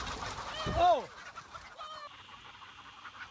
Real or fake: real